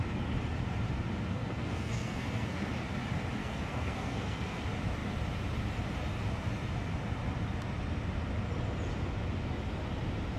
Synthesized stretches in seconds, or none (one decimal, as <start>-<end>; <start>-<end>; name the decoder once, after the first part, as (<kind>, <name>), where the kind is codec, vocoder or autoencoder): 1.3-2.7 (codec, SNAC); 3.4-4.6

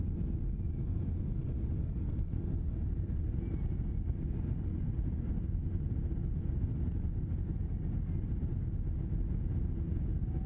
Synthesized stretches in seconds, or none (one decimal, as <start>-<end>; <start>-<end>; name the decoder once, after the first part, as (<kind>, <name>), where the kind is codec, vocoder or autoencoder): 1.8-2.4 (codec, SNAC)

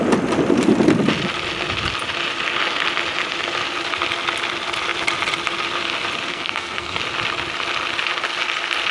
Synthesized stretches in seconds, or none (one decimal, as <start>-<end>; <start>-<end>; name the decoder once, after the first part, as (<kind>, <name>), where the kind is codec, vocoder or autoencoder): 6.3-7.0 (codec, SNAC)

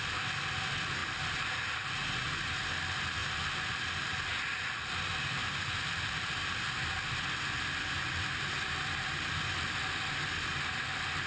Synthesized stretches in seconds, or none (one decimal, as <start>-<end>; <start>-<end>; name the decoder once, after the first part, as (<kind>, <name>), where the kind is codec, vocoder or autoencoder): none